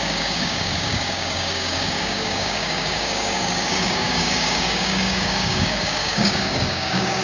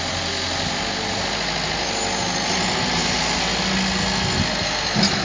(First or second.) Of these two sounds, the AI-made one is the first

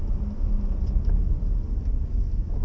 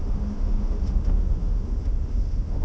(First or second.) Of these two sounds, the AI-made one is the second